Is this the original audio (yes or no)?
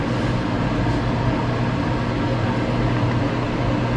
yes